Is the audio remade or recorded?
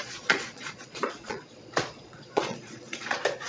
remade